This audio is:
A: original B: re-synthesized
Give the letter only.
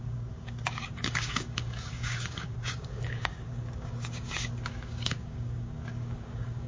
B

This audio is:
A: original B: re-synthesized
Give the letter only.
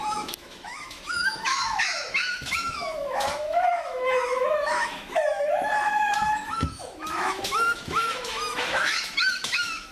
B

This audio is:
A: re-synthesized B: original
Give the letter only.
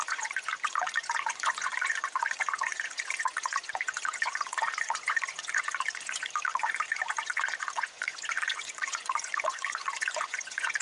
A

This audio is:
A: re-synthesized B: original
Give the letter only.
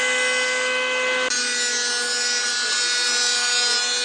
B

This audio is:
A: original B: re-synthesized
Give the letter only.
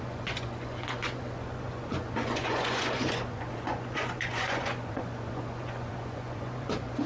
B